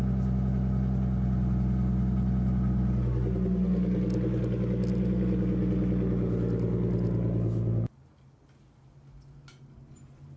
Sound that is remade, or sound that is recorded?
recorded